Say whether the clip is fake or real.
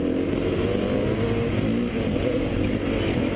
real